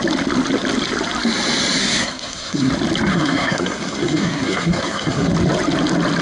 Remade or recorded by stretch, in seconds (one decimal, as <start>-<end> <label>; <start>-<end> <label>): 0.0-1.8 recorded; 1.8-2.7 remade; 2.7-3.1 recorded; 3.1-5.3 remade; 5.3-6.2 recorded